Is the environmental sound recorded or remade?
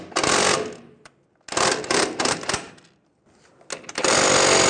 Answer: recorded